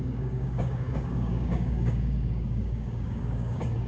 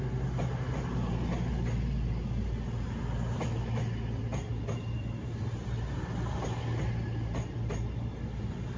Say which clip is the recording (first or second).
second